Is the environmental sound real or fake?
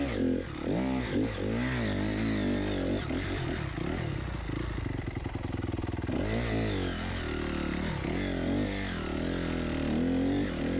real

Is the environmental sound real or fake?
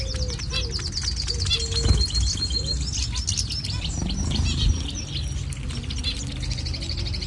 real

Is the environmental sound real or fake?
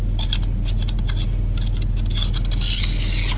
real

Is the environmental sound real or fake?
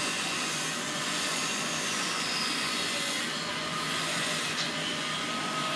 fake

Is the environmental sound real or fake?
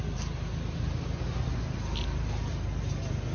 real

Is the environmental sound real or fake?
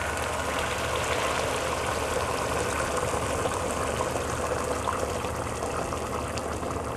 real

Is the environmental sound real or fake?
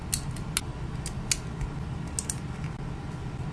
real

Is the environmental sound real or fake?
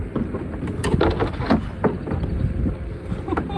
real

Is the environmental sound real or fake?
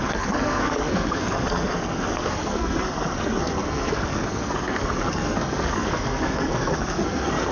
fake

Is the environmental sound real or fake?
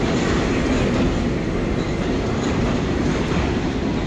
real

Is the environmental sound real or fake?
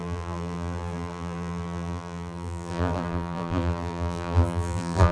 fake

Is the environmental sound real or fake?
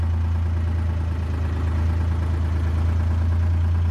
real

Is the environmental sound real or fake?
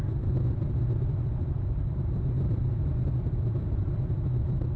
fake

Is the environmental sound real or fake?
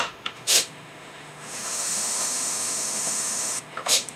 fake